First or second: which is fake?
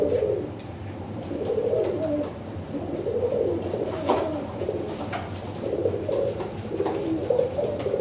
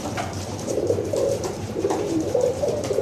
second